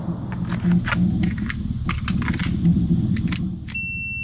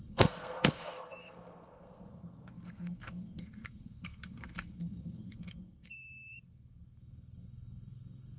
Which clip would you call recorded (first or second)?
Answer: first